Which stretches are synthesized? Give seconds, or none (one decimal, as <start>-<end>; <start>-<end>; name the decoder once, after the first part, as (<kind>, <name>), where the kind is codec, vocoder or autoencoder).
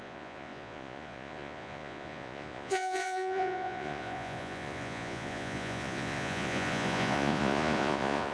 0.0-8.3 (vocoder, Vocos)